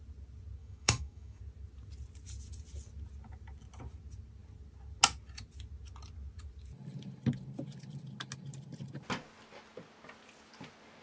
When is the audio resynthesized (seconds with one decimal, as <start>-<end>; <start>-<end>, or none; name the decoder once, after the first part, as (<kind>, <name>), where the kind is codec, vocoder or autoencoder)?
0.6-1.4 (autoencoder, DAC-VAE)